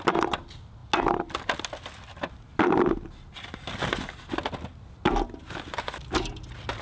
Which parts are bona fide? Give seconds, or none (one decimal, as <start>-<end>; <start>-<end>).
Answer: 0.0-6.8